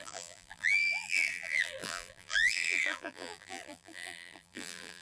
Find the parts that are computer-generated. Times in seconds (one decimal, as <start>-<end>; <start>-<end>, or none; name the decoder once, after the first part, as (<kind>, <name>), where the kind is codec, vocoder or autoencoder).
0.0-5.0 (vocoder, BigVGAN v2)